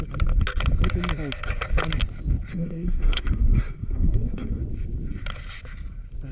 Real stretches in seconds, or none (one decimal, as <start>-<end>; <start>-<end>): 0.0-2.5; 4.6-6.3

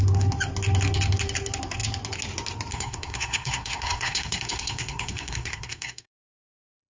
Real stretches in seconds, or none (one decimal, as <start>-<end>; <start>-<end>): 0.0-2.7